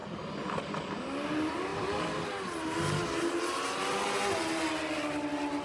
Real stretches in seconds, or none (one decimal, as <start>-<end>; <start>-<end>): 0.0-5.6